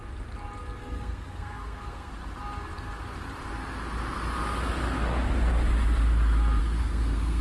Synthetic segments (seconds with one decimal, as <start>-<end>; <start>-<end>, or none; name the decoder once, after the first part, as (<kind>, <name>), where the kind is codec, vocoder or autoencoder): 0.8-2.2 (codec, SNAC); 6.6-7.4